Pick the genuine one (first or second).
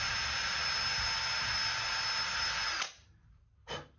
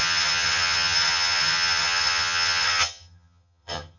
first